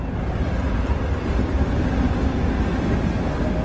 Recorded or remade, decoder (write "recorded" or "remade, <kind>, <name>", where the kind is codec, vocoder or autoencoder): recorded